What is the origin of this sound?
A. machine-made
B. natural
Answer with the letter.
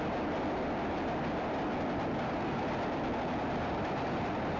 B